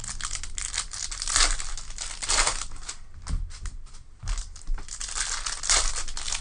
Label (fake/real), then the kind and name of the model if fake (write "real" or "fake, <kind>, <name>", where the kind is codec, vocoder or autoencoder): real